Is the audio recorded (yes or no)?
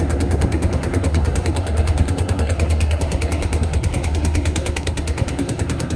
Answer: no